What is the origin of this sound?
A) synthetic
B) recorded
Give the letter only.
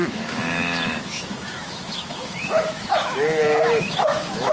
A